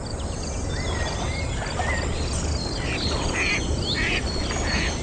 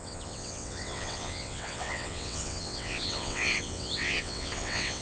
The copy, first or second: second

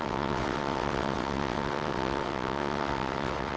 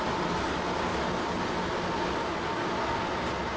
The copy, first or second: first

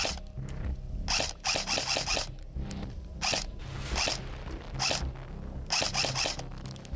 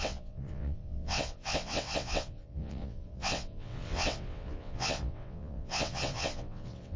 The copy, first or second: second